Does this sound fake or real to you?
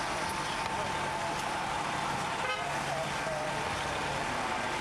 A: real